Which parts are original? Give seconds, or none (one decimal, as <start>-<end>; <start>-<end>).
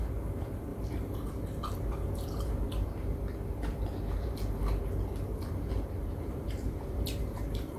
0.0-0.7; 2.5-6.0